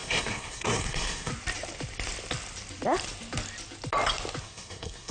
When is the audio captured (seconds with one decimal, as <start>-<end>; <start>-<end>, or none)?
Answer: 1.3-4.4